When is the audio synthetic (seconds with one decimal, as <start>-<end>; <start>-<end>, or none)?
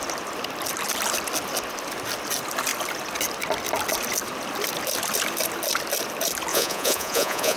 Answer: 6.5-7.6